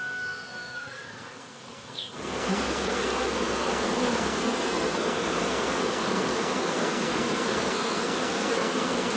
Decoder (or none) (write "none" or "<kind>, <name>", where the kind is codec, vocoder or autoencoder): codec, SNAC